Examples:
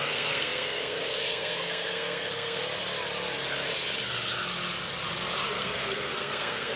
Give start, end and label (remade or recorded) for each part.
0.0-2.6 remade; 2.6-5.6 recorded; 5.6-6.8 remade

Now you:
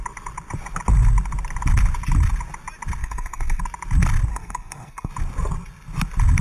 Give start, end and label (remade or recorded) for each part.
0.0-3.0 recorded; 3.0-3.6 remade; 3.6-4.3 recorded; 4.3-5.1 remade; 5.1-6.4 recorded

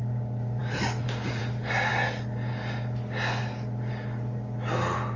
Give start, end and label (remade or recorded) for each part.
0.0-5.2 recorded

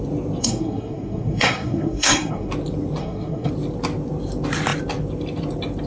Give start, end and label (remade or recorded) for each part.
0.0-0.4 recorded; 0.4-2.5 remade; 2.5-3.0 recorded; 3.0-3.5 remade; 3.5-5.9 recorded

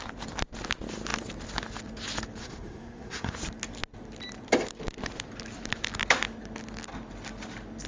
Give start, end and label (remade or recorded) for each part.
0.0-2.4 recorded; 2.4-3.3 remade; 3.3-7.9 recorded

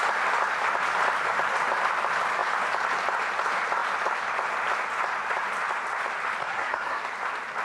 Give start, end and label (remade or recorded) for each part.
0.0-6.4 recorded; 6.4-7.0 remade; 7.0-7.6 recorded

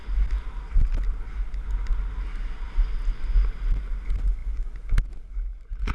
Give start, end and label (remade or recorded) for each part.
0.0-5.9 recorded